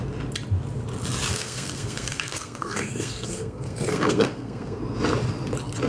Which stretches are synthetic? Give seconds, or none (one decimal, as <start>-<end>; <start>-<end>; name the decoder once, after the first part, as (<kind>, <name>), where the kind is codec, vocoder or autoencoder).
1.3-4.8 (codec, SNAC)